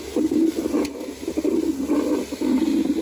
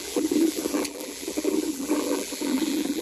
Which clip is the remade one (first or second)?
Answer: second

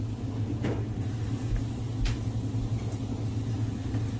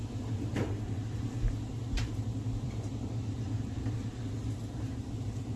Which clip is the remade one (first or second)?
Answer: second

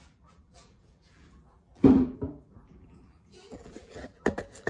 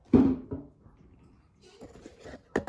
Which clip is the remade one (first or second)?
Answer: first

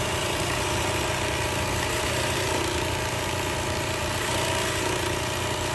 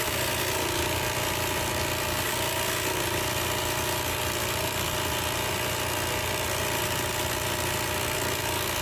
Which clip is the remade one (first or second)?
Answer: first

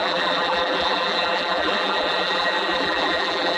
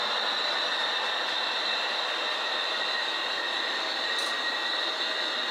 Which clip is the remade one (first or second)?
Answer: first